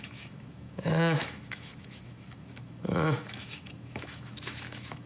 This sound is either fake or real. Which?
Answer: fake